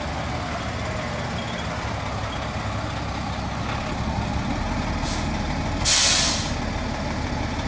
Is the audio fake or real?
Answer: real